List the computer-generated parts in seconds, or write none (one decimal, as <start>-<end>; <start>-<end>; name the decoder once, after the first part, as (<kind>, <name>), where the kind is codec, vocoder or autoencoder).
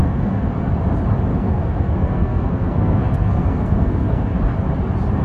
0.0-0.5 (codec, SNAC); 1.3-4.4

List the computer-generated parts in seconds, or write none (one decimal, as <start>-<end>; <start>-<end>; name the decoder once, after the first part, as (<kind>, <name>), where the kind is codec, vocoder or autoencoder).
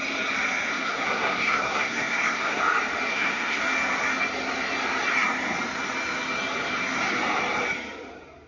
0.7-2.6 (codec, SNAC); 3.1-3.6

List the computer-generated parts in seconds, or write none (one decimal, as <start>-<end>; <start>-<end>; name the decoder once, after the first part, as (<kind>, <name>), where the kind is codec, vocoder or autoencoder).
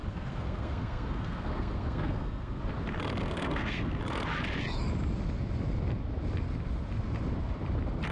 0.0-2.6 (codec, SNAC); 3.2-3.9